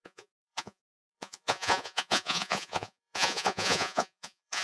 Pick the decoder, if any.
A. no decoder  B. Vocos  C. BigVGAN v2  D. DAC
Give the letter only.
B